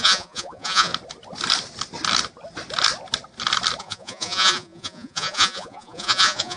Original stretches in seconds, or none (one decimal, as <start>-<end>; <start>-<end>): 0.9-3.8